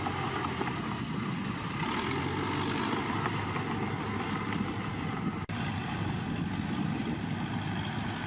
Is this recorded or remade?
recorded